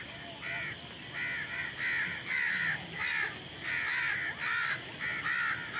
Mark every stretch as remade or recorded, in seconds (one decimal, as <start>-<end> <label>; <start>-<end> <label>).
0.0-5.8 recorded